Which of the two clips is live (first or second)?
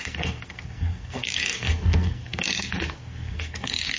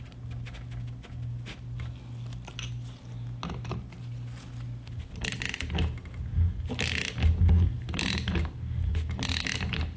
second